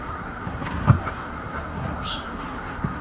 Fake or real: fake